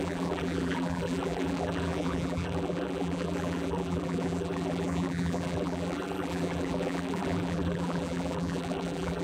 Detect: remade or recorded remade